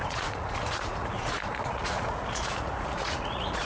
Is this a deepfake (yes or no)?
yes